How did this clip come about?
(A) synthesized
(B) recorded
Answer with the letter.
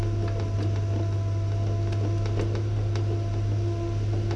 B